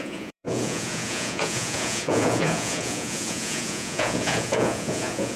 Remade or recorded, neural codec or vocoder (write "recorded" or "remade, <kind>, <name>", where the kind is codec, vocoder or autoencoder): remade, vocoder, Vocos